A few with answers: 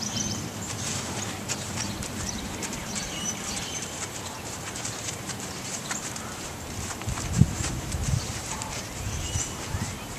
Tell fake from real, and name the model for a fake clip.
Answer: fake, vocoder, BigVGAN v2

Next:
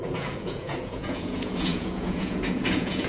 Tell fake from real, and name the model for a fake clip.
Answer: fake, vocoder, Vocos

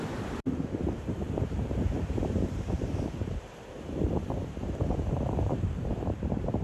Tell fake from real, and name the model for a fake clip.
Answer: fake, vocoder, BigVGAN v2